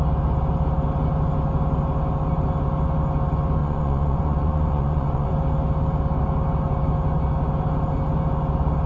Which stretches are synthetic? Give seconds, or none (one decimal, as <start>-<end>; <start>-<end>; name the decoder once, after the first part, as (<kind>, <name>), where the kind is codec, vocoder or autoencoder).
3.6-5.3 (vocoder, Vocos)